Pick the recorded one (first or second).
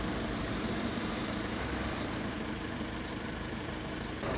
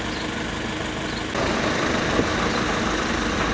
second